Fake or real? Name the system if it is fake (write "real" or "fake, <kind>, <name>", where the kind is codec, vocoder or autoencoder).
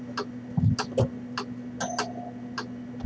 real